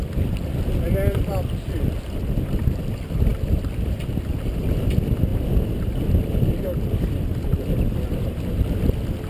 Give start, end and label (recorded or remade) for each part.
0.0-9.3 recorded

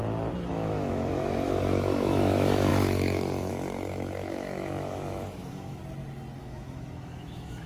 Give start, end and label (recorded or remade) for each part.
0.0-0.5 recorded; 0.5-5.8 remade; 5.8-6.4 recorded; 6.4-7.7 remade

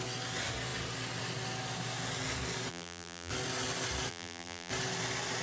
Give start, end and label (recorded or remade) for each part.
0.0-2.7 recorded; 2.7-3.3 remade; 3.3-4.1 recorded; 4.1-4.7 remade; 4.7-5.4 recorded

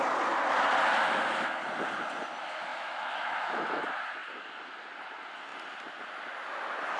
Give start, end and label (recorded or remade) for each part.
0.0-2.7 recorded; 2.7-3.8 remade; 3.8-7.0 recorded

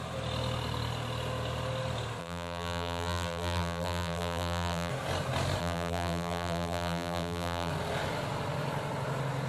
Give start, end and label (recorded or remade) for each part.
0.0-2.2 recorded; 2.2-4.9 remade; 4.9-5.6 recorded; 5.6-7.7 remade; 7.7-9.5 recorded

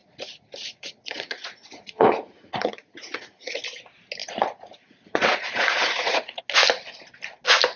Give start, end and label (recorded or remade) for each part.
0.0-3.5 remade; 3.5-4.2 recorded; 4.2-6.4 remade; 6.4-7.8 recorded